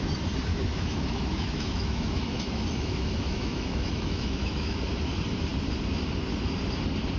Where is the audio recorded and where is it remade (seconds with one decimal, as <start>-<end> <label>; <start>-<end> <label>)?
0.0-0.5 recorded; 0.5-4.8 remade; 4.8-7.2 recorded